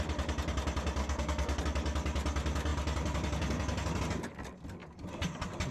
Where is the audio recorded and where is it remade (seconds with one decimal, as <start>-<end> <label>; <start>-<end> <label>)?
0.0-1.0 recorded; 1.0-1.6 remade; 1.6-5.7 recorded